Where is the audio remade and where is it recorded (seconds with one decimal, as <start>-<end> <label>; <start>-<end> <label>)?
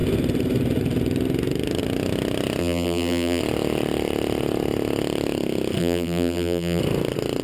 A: 0.0-2.6 recorded; 2.6-3.4 remade; 3.4-5.8 recorded; 5.8-6.8 remade; 6.8-7.4 recorded